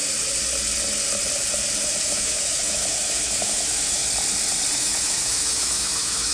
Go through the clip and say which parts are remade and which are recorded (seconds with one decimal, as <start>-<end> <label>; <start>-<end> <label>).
0.0-2.0 recorded; 2.0-4.0 remade; 4.0-4.7 recorded; 4.7-6.3 remade